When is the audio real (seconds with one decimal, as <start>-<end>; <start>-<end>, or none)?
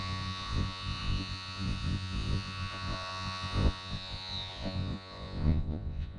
none